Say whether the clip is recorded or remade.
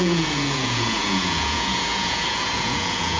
remade